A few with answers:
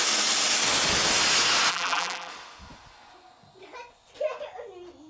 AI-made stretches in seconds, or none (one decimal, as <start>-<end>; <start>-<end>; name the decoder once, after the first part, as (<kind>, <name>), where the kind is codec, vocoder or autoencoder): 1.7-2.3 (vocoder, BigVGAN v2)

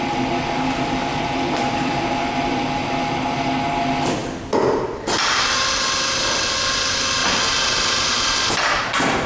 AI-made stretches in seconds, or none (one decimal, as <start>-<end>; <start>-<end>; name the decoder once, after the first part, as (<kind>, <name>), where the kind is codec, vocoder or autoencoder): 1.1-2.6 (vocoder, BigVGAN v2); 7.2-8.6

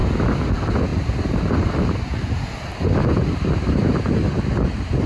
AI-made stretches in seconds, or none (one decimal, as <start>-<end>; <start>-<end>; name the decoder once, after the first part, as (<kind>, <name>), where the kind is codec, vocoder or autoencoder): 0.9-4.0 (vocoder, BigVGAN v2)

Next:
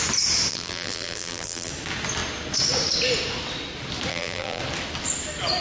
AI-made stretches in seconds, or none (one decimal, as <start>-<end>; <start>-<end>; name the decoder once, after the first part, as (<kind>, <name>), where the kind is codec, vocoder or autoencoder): 0.5-1.7 (vocoder, BigVGAN v2); 4.1-4.6